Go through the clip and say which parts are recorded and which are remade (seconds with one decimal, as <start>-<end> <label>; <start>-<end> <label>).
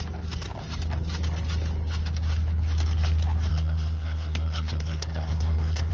0.0-3.5 recorded; 3.5-5.9 remade